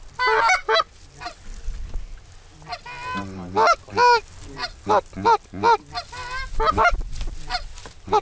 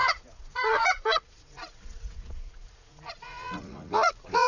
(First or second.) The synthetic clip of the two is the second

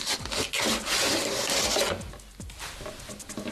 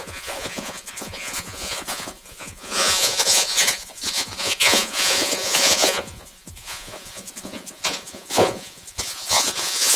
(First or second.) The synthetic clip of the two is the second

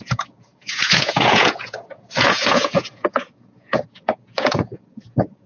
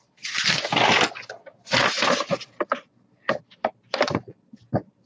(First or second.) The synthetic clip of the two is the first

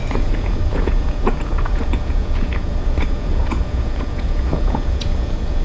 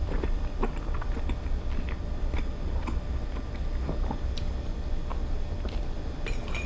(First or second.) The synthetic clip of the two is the first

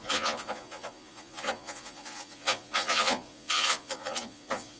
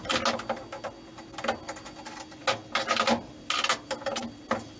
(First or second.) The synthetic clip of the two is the first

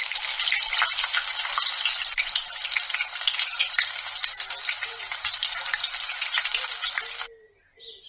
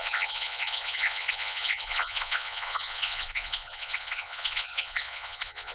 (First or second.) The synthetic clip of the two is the second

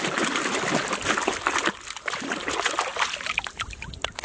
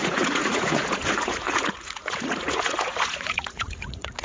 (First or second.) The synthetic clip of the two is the second